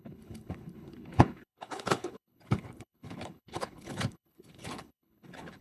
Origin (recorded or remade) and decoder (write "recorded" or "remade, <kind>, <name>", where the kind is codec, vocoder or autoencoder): remade, codec, HILCodec